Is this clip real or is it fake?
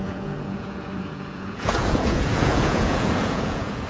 fake